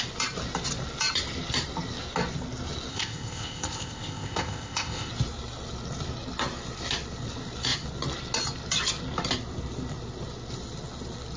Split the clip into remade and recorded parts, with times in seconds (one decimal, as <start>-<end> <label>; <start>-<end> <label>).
0.0-2.9 recorded; 2.9-5.1 remade; 5.1-11.4 recorded